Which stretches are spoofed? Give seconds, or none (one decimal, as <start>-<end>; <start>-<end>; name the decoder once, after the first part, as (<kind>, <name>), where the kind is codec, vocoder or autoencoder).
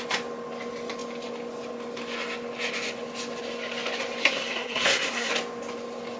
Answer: 4.2-5.3 (codec, SNAC)